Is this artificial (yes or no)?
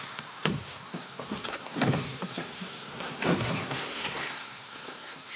yes